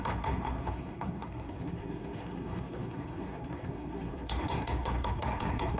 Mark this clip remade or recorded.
remade